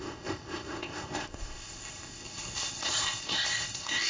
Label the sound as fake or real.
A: fake